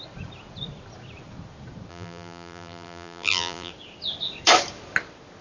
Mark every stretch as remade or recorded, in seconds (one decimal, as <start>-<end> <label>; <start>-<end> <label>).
0.0-1.9 recorded; 1.9-3.7 remade; 3.7-5.4 recorded